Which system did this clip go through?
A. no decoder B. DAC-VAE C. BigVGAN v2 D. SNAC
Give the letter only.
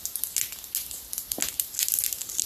A